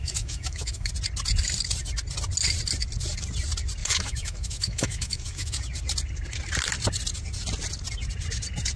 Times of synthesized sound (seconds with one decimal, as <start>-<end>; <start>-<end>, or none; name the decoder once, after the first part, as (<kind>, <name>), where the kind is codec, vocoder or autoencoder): 0.0-0.9 (autoencoder, DAC-VAE); 3.8-5.6